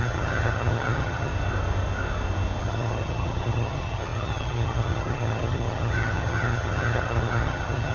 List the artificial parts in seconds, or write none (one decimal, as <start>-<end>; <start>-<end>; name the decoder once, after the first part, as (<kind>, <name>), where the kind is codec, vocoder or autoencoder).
0.0-1.3 (vocoder, HiFi-GAN); 2.6-7.9